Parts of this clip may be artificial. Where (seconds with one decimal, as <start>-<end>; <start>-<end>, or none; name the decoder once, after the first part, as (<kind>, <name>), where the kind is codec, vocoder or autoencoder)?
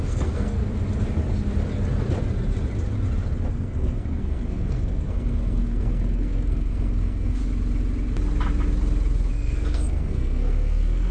0.0-0.6 (codec, SNAC); 3.5-7.4; 9.3-11.1